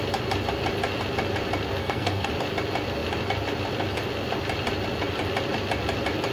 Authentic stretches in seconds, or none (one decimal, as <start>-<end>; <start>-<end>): 0.0-1.8; 2.3-6.3